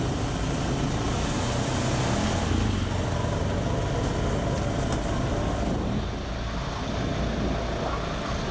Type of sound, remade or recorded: recorded